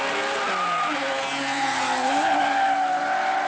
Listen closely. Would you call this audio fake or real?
real